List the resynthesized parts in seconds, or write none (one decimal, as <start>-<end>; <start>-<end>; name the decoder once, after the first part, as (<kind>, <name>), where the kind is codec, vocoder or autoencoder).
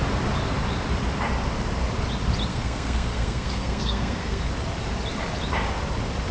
2.5-4.4 (codec, SNAC)